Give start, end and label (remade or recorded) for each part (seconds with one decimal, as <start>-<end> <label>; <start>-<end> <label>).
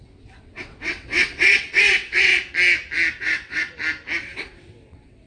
0.0-2.3 remade; 2.3-3.2 recorded; 3.2-3.7 remade; 3.7-4.2 recorded; 4.2-5.3 remade